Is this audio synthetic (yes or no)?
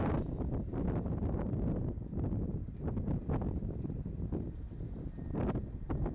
no